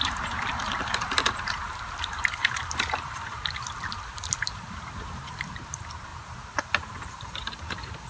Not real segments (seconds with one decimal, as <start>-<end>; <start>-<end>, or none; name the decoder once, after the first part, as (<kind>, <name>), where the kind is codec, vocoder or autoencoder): 0.0-6.1 (vocoder, BigVGAN v2); 6.6-8.1